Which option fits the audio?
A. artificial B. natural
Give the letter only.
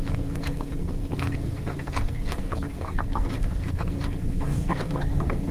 A